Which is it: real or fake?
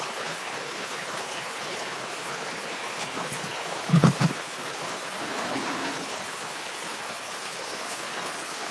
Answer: fake